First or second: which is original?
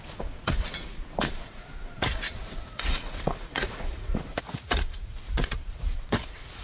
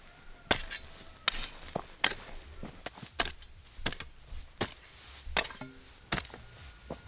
second